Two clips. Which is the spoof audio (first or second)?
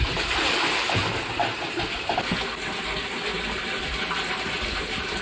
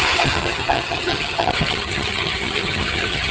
second